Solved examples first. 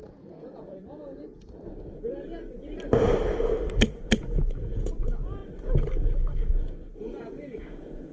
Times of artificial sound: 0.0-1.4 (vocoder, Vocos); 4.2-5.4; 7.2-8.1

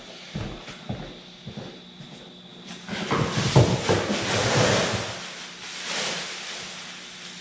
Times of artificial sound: none

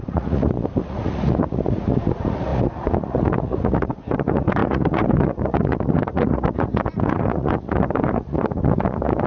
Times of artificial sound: 0.0-9.3 (vocoder, Vocos)

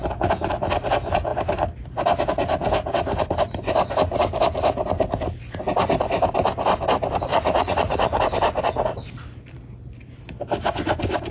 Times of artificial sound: 7.3-8.2 (vocoder, Vocos)

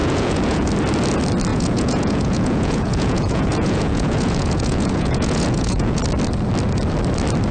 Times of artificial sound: 0.0-0.7 (vocoder, Vocos); 1.5-6.0